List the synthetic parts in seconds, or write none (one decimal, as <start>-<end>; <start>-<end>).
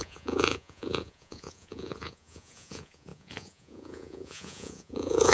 0.0-5.3